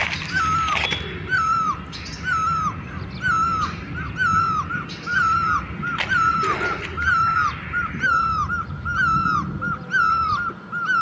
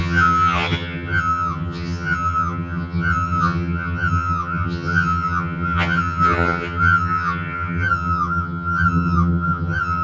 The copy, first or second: second